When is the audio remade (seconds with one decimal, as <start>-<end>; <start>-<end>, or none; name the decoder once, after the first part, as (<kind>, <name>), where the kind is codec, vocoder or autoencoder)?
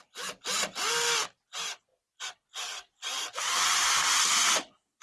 none